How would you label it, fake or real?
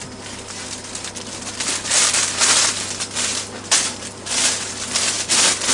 real